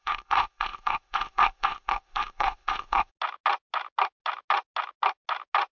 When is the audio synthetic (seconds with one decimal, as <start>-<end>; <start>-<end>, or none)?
0.0-3.1